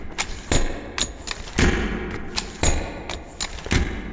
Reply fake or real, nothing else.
real